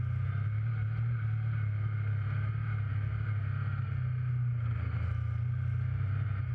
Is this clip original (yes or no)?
yes